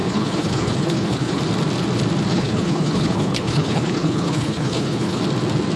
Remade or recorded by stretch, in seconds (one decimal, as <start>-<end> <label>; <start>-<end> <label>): 0.0-1.4 remade; 1.4-2.3 recorded; 2.3-5.2 remade; 5.2-5.8 recorded